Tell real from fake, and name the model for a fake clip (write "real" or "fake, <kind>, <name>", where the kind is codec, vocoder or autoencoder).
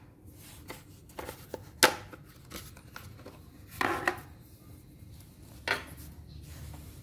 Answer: real